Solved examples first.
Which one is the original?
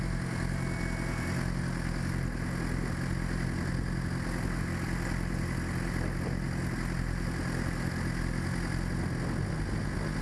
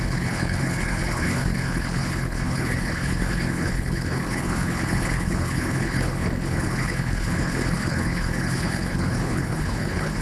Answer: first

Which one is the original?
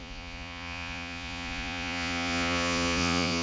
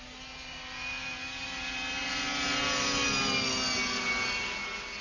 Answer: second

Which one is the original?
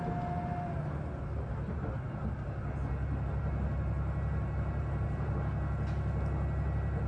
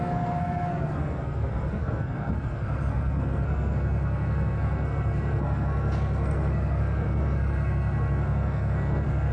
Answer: first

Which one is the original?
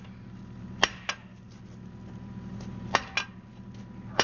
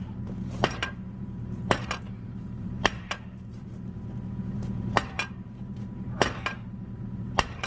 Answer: first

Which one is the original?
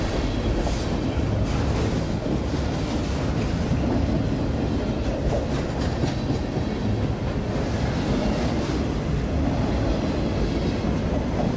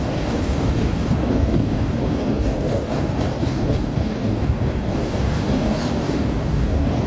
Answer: first